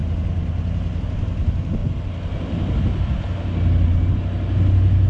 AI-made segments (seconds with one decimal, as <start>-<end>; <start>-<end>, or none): none